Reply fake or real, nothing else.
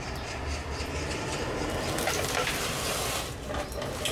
fake